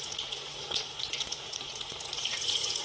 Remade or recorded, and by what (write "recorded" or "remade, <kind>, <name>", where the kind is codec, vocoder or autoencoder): remade, vocoder, Vocos